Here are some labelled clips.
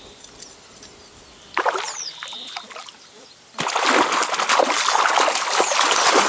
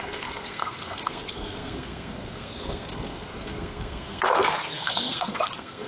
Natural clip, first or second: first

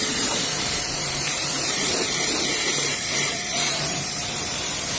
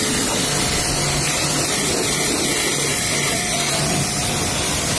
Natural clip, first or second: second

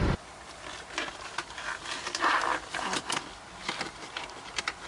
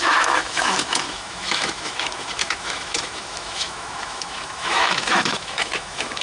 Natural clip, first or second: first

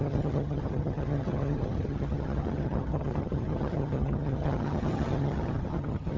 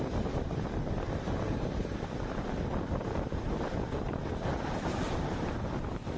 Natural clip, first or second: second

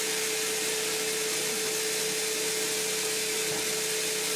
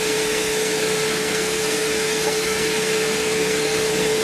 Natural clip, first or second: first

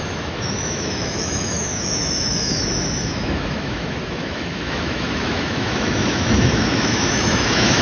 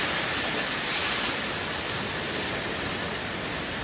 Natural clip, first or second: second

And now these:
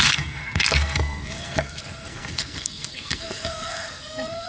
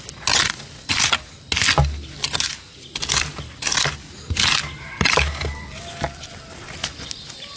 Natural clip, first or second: second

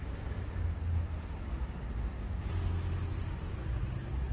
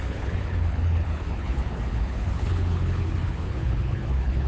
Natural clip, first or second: first